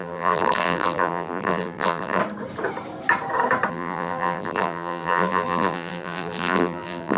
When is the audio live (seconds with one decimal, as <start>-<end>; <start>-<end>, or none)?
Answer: 2.2-3.7